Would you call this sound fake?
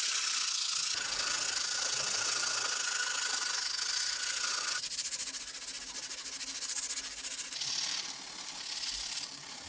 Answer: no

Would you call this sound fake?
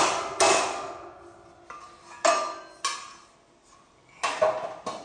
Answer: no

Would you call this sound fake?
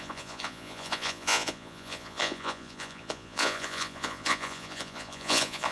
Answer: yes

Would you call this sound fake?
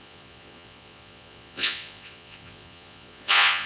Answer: yes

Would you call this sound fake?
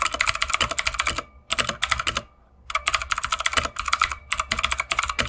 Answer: no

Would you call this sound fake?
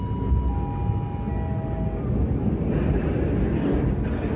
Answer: no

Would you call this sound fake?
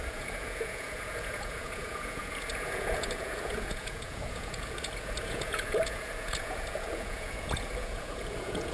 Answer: yes